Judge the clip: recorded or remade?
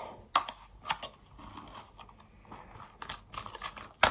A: recorded